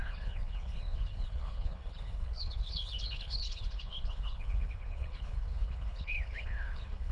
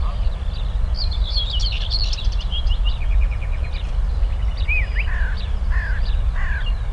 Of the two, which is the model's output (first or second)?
first